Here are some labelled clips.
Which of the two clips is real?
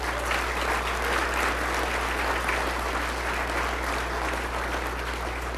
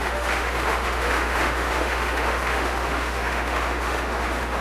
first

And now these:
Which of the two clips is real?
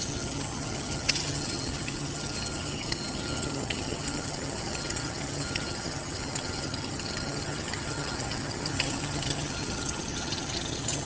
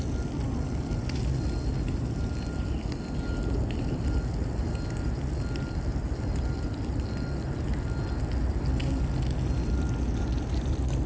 second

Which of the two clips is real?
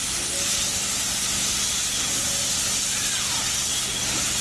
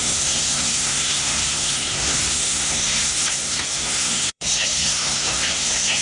first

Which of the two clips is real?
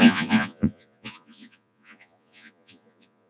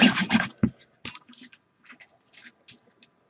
second